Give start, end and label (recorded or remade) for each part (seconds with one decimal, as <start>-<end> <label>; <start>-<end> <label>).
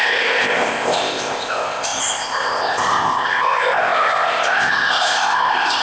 0.0-5.8 remade